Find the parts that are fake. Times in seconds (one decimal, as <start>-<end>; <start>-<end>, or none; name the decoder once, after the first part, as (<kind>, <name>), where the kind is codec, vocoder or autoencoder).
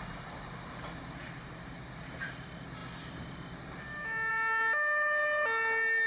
none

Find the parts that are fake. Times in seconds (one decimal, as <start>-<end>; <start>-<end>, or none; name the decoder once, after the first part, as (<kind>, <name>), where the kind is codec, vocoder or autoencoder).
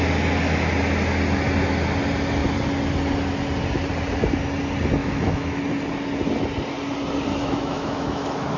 5.0-5.6 (autoencoder, DAC-VAE); 7.4-8.6